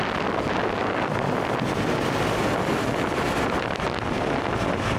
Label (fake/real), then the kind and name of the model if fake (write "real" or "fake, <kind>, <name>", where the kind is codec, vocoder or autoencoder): real